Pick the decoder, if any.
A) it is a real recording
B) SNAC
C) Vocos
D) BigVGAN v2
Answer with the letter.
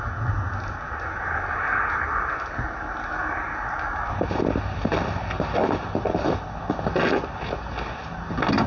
A